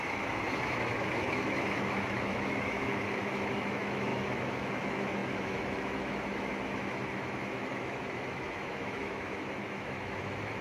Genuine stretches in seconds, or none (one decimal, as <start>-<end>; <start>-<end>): none